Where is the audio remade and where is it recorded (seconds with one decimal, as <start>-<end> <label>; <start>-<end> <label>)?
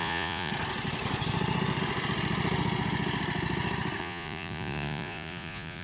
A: 0.0-0.5 remade; 0.5-4.0 recorded; 4.0-5.8 remade